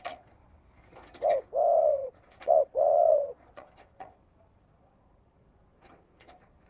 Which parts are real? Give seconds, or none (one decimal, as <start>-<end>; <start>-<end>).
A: 0.4-1.8